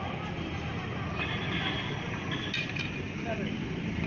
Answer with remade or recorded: recorded